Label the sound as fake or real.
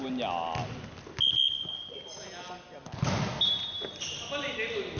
real